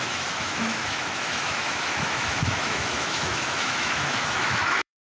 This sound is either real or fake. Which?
fake